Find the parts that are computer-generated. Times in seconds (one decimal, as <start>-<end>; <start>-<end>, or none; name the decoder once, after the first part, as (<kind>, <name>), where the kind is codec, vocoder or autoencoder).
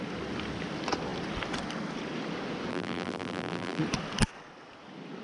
2.7-3.8 (vocoder, BigVGAN v2)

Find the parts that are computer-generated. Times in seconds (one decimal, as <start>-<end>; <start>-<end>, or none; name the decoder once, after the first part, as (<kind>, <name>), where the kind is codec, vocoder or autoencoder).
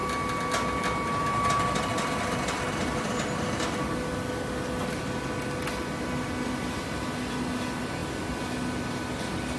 none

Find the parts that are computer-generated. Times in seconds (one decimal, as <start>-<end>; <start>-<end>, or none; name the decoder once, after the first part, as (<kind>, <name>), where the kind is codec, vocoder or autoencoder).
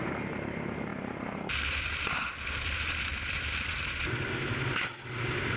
none